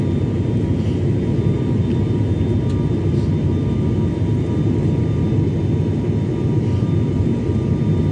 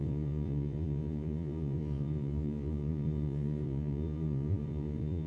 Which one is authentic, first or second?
first